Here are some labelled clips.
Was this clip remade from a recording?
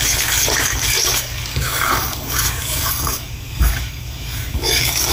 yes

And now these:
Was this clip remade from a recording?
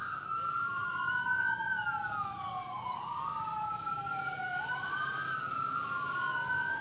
yes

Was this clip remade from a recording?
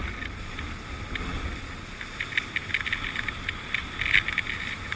no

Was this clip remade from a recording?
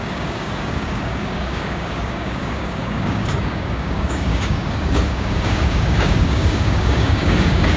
yes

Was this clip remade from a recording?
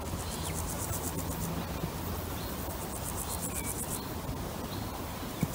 no